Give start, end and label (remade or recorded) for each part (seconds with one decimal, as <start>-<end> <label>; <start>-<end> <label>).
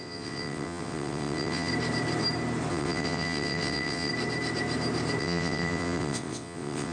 0.0-1.7 remade; 1.7-2.7 recorded; 2.7-4.1 remade; 4.1-5.2 recorded; 5.2-6.9 remade